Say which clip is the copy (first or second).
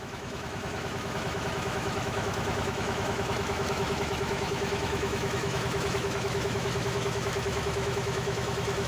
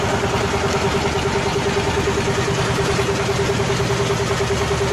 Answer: first